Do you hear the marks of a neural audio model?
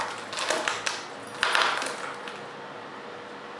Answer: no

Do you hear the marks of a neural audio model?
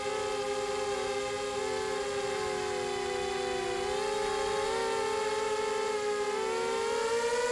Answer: no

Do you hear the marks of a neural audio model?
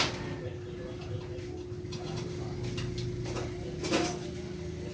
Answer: no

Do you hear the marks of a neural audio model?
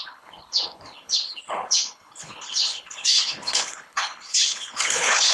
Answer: yes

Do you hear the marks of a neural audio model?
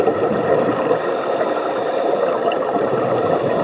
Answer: no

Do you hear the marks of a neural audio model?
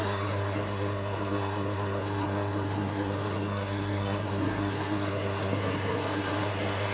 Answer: yes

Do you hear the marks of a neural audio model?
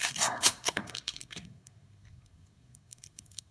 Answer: yes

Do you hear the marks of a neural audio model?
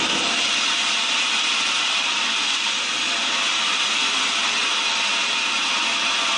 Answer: no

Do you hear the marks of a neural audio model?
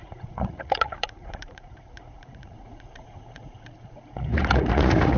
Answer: yes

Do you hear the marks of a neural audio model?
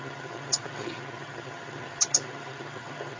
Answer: yes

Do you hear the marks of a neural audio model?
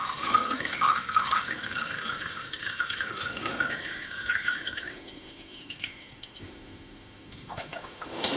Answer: yes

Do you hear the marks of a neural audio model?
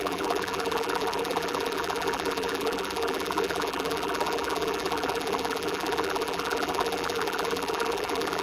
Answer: yes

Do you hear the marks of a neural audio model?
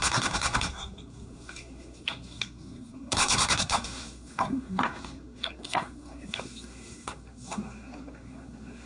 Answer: yes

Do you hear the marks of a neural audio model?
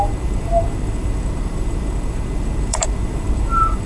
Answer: yes